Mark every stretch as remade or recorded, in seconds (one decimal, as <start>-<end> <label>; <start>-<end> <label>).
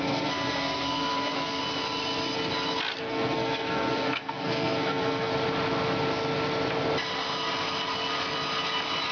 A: 0.0-1.6 remade; 1.6-3.0 recorded; 3.0-5.3 remade; 5.3-9.1 recorded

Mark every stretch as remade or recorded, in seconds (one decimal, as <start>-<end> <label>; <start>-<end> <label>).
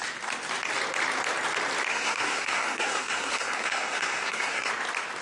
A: 0.0-1.9 recorded; 1.9-4.7 remade; 4.7-5.2 recorded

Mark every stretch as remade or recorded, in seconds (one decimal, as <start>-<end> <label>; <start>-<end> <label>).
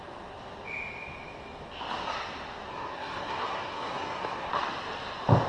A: 0.0-2.7 recorded; 2.7-4.5 remade; 4.5-5.5 recorded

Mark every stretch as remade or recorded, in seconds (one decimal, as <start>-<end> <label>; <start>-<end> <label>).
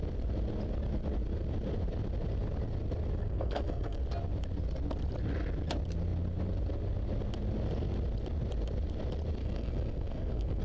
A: 0.0-3.2 recorded; 3.2-4.0 remade; 4.0-9.4 recorded; 9.4-10.6 remade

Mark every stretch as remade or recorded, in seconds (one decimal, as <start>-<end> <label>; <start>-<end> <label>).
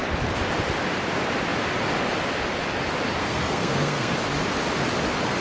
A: 0.0-3.2 recorded; 3.2-4.1 remade; 4.1-5.4 recorded